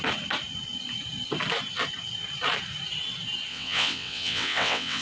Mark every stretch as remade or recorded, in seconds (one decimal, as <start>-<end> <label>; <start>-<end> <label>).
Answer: 0.0-3.5 recorded; 3.5-5.0 remade